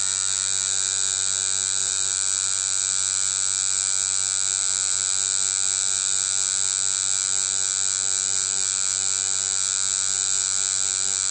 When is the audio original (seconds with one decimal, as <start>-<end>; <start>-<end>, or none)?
0.0-1.8; 2.8-4.6; 5.1-11.3